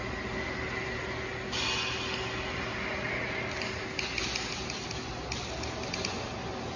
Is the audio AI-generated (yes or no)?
no